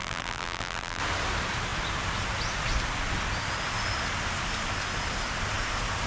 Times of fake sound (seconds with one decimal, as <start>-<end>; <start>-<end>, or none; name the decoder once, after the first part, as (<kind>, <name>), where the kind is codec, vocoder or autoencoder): 0.0-1.0 (vocoder, BigVGAN v2)

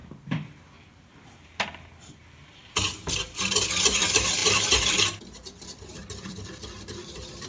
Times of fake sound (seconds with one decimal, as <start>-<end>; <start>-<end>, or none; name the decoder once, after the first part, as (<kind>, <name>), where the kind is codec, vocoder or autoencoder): 1.8-2.6 (vocoder, BigVGAN v2); 3.3-7.5

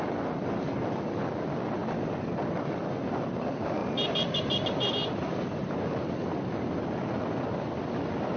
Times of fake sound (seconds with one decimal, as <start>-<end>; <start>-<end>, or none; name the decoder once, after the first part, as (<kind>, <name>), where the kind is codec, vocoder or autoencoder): none

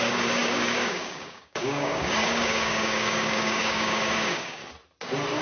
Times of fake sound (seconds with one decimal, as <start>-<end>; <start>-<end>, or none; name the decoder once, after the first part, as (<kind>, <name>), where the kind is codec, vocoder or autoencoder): 0.0-4.6 (codec, DAC)

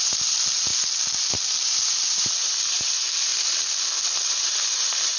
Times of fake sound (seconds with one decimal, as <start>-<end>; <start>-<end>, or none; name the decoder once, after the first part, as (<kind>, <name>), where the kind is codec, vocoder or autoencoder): 0.0-0.7 (vocoder, BigVGAN v2); 1.5-3.3; 4.3-5.2